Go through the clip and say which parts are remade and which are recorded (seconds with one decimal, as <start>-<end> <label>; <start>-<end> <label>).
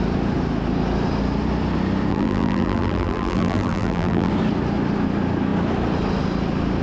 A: 0.0-2.1 recorded; 2.1-4.3 remade; 4.3-6.8 recorded